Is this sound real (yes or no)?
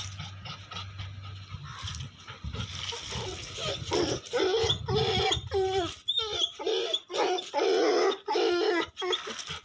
yes